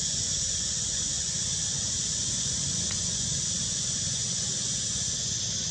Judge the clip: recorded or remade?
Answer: remade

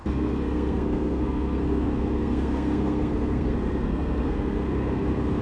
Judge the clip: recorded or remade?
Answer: remade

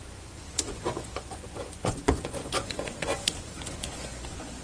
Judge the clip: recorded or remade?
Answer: remade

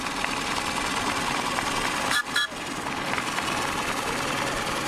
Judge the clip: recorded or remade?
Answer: recorded